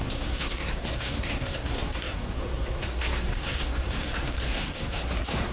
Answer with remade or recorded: remade